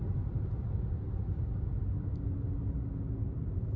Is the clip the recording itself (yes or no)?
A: yes